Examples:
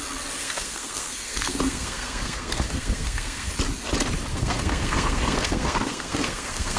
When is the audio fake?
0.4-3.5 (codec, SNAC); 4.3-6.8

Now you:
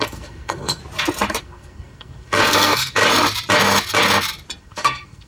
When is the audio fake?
0.0-0.8 (codec, SNAC); 1.4-3.0; 4.6-5.3

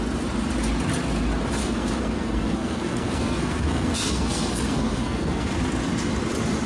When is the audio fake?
1.6-5.6 (codec, SNAC)

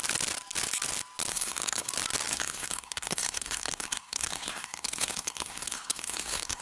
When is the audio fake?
1.3-1.9 (codec, SNAC); 2.3-6.6